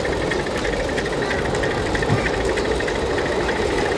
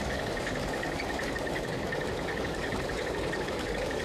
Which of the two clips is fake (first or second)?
second